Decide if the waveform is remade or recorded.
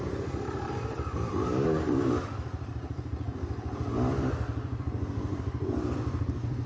remade